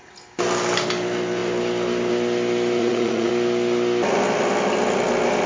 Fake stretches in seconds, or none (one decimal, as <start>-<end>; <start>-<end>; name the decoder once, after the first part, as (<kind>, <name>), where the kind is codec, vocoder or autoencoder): 2.8-3.3 (vocoder, Vocos)